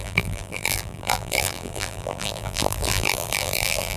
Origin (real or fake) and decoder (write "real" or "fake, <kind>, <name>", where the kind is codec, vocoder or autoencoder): fake, vocoder, BigVGAN v2